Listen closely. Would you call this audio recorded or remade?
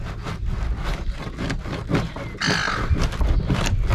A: recorded